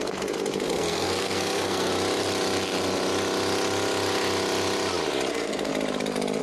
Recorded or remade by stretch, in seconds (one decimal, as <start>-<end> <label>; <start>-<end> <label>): 0.0-1.9 remade; 1.9-5.3 recorded; 5.3-5.7 remade; 5.7-6.4 recorded